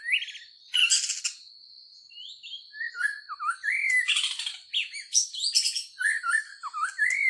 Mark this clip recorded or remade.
recorded